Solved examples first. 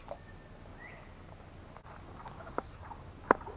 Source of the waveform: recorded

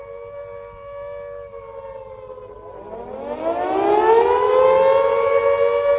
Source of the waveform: recorded